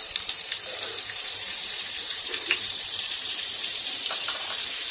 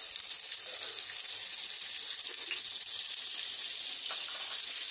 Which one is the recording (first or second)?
second